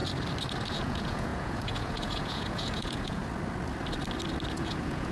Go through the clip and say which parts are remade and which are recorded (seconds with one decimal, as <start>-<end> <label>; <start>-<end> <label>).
0.0-0.7 recorded; 0.7-3.2 remade; 3.2-4.5 recorded; 4.5-5.1 remade